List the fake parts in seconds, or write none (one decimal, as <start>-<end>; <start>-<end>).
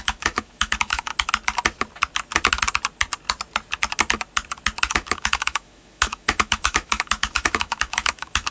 0.0-1.1; 4.9-8.5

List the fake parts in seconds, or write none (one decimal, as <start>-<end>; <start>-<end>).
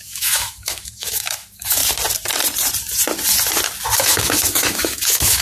0.0-1.8; 4.0-5.4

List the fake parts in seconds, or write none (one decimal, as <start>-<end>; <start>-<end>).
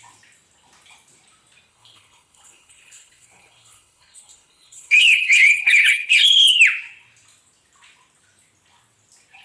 1.7-6.6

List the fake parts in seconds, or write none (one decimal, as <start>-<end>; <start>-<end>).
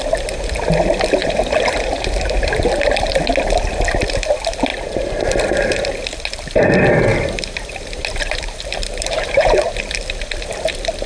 1.2-3.2; 7.1-9.8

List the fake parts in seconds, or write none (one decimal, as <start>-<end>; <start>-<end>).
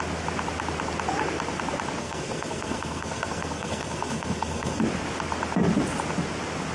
2.0-4.8